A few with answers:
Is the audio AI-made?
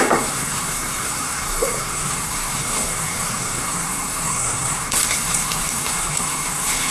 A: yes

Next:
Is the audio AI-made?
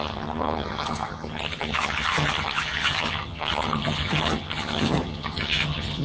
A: yes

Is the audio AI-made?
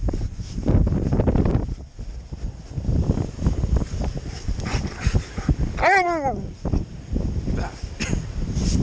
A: no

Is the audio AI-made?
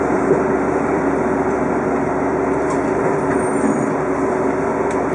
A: no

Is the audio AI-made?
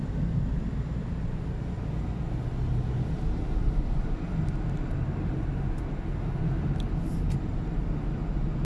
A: no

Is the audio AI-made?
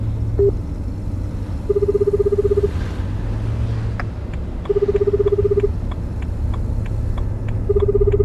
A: no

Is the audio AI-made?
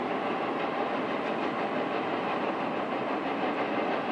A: no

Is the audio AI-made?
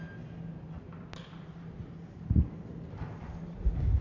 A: no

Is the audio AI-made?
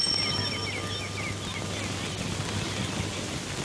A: no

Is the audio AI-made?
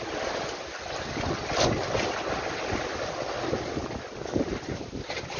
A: no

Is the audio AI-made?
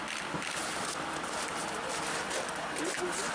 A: no